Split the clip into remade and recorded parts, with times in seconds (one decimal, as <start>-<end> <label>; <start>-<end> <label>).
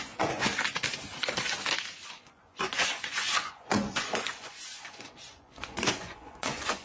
0.0-0.5 remade; 0.5-2.1 recorded; 2.1-6.8 remade